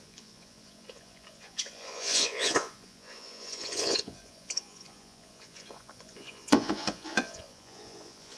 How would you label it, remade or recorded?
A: remade